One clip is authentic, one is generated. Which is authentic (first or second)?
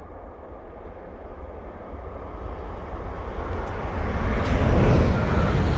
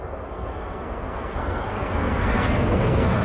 first